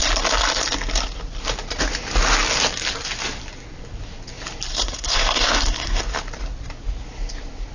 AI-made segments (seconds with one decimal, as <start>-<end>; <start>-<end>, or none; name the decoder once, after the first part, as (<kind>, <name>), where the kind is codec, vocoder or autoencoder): 4.7-6.0 (codec, SNAC)